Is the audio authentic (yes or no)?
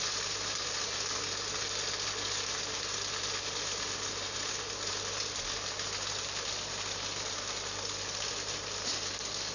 yes